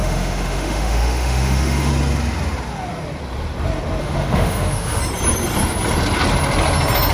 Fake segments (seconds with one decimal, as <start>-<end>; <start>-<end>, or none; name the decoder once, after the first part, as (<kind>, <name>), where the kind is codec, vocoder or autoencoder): 0.0-1.9 (autoencoder, DAC-VAE); 4.0-5.0